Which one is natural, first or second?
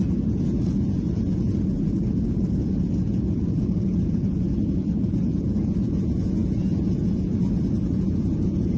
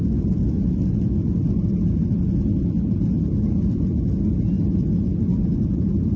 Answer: second